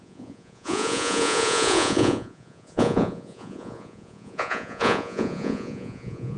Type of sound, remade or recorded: remade